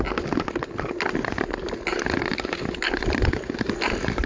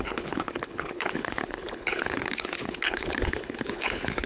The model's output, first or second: second